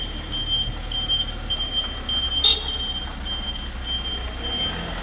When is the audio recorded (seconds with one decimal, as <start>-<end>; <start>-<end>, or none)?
0.0-5.0